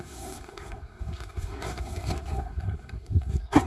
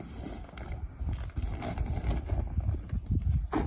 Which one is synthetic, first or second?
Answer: first